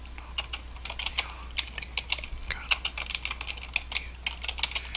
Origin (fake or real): real